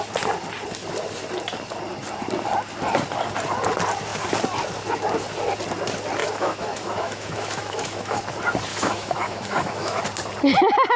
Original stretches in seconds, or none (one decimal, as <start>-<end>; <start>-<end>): 0.0-6.2; 8.2-8.7; 10.0-11.0